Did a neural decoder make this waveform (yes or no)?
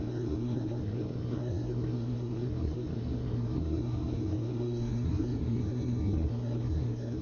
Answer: yes